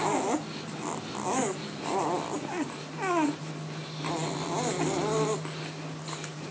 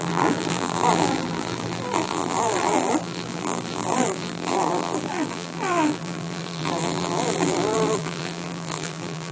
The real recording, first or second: first